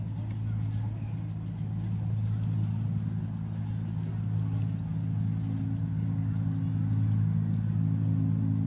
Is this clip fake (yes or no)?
no